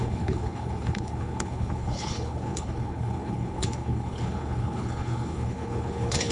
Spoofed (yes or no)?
yes